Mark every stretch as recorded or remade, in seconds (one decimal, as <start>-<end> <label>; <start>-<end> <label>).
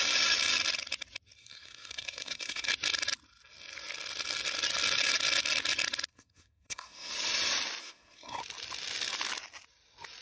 0.0-1.4 recorded; 1.4-2.7 remade; 2.7-6.1 recorded; 6.1-7.1 remade; 7.1-7.8 recorded; 7.8-8.4 remade; 8.4-10.2 recorded